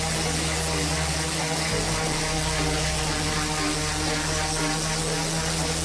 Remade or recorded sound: recorded